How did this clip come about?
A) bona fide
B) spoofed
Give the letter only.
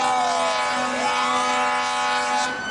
A